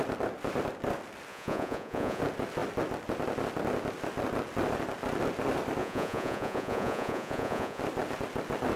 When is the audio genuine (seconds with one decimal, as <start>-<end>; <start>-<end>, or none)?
0.0-1.3; 2.2-5.8; 7.8-8.8